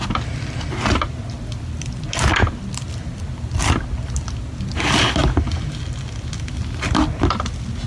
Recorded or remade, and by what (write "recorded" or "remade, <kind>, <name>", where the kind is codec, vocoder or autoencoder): recorded